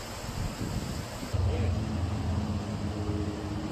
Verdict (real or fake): real